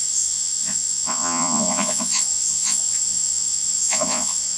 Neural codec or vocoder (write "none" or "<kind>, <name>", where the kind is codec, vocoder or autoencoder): vocoder, Vocos